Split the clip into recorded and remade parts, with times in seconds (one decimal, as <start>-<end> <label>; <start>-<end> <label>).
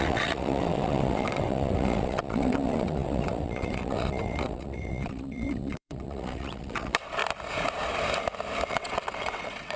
0.0-7.2 remade; 7.2-8.7 recorded; 8.7-9.8 remade